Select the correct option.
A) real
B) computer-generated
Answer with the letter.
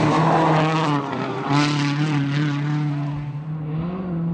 A